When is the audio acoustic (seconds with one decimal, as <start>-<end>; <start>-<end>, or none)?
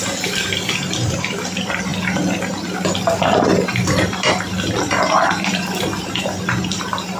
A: 1.9-2.5